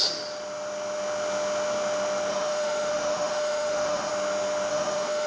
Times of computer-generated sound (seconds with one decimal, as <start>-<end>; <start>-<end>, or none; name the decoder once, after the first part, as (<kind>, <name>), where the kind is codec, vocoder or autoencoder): 2.3-4.1 (autoencoder, DAC-VAE); 4.7-5.3